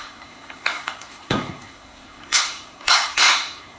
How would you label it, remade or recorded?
remade